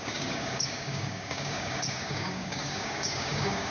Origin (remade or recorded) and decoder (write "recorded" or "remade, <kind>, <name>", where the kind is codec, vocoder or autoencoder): remade, codec, DAC